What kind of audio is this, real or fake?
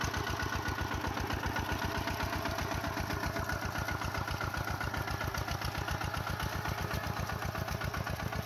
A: real